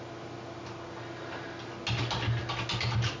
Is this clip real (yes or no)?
yes